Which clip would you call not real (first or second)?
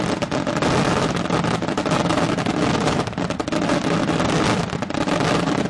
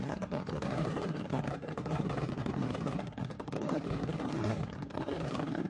second